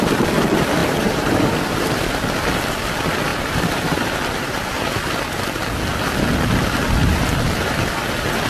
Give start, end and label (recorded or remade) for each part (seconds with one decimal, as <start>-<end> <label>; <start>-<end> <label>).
0.0-0.8 recorded; 0.8-2.1 remade; 2.1-3.3 recorded; 3.3-4.8 remade; 4.8-8.5 recorded